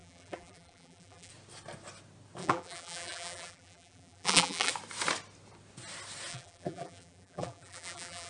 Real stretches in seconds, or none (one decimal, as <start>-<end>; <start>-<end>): 1.3-2.4; 4.7-6.3